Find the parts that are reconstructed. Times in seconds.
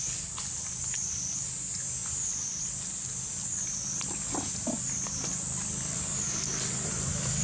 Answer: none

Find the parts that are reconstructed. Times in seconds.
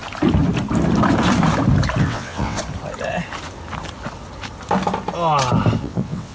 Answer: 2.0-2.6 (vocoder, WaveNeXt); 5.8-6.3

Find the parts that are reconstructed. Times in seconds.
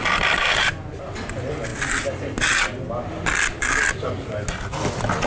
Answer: none